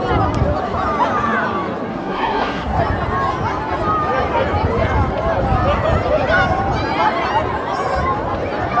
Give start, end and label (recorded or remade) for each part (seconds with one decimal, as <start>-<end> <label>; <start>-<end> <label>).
0.0-1.9 recorded; 1.9-2.8 remade; 2.8-8.8 recorded